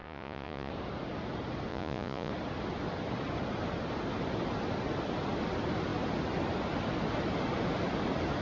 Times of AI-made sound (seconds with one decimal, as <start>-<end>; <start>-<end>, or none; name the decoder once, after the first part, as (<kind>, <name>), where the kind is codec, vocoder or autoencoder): 0.0-0.7 (vocoder, Vocos); 1.7-2.3

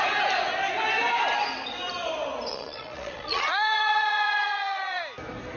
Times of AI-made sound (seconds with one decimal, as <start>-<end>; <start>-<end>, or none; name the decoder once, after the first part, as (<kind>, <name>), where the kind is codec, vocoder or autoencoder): 2.5-5.0 (vocoder, Vocos)

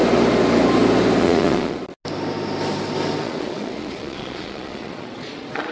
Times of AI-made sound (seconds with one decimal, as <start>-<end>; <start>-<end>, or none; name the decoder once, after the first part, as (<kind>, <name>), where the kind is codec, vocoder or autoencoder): 1.2-1.8 (vocoder, Vocos); 3.2-5.7

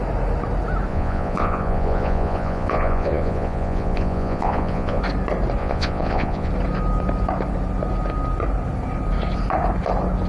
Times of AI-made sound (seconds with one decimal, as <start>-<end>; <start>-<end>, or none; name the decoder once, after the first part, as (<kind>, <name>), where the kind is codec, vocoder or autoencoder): 0.9-5.0 (vocoder, Vocos); 5.6-6.5

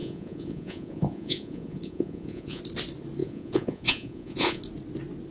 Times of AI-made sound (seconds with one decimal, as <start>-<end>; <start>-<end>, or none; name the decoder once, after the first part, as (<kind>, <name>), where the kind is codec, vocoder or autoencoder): 0.0-2.6 (vocoder, Vocos); 3.2-4.6

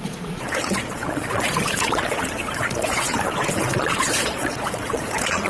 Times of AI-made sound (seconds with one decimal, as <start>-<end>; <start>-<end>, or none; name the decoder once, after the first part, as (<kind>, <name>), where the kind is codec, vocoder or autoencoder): 0.0-5.5 (vocoder, Vocos)

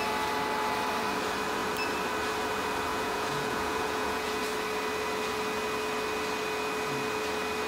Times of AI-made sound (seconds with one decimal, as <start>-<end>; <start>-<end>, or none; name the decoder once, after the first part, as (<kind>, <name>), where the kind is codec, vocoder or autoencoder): 2.9-4.4 (vocoder, Vocos)

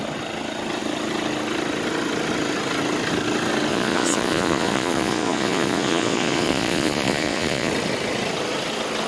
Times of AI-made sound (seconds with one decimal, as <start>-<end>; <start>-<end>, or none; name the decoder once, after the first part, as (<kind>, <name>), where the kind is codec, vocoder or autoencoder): 3.7-7.7 (vocoder, Vocos)